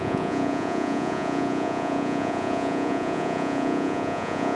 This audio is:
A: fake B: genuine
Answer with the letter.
A